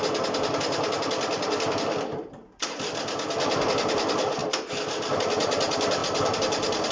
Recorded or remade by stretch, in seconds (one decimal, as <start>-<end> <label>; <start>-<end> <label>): 0.0-6.9 recorded